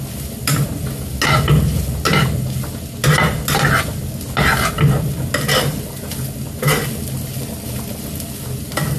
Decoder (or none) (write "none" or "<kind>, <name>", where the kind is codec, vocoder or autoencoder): none